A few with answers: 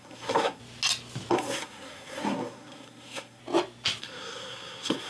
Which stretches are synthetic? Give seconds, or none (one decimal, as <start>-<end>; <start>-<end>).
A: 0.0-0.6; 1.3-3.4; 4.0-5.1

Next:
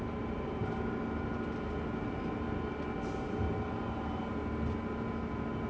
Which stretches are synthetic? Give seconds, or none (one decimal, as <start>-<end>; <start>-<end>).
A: none

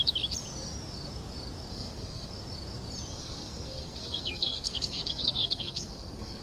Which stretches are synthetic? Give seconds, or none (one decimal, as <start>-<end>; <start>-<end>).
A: 1.7-2.3; 3.1-6.4

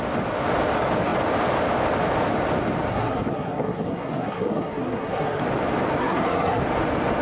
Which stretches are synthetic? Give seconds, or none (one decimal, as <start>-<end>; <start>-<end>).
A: 2.9-5.4; 6.0-6.6

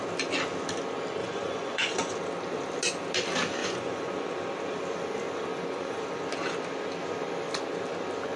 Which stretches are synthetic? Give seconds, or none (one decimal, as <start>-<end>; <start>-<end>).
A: 1.2-2.1; 3.6-4.3; 5.5-6.0